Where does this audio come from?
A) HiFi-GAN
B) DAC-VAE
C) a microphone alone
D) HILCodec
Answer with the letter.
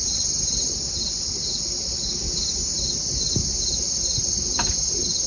C